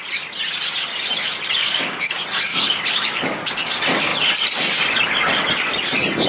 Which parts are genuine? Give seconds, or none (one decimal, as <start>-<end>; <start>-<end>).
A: 0.0-1.6; 2.1-2.5; 3.5-6.3